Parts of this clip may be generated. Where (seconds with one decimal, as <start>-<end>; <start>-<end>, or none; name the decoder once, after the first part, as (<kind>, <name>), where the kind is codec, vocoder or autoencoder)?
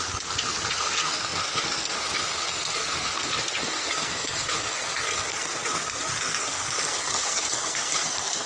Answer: 0.0-8.5 (codec, SNAC)